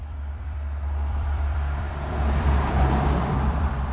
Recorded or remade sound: remade